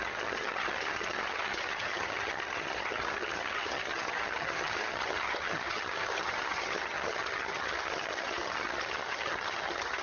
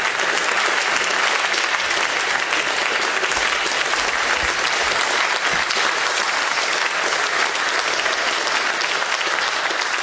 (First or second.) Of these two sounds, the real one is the second